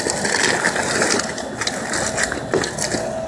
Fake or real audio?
real